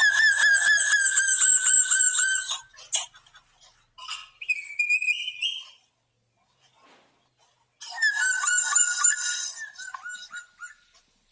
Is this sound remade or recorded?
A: recorded